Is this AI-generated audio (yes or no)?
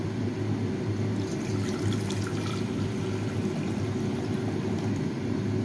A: no